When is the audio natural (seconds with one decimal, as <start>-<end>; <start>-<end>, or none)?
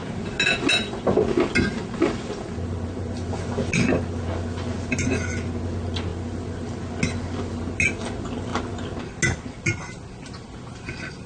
0.0-11.3